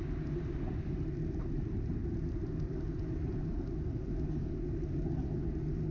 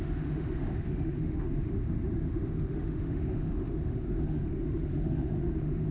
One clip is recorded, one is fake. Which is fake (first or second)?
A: second